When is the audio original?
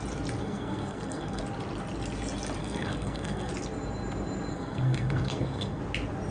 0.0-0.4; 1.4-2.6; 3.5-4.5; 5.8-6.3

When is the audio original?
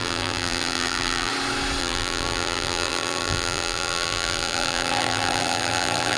1.3-1.8